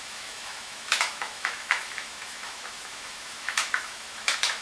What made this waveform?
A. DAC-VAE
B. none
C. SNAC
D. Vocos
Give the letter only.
A